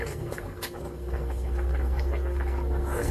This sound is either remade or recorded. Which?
remade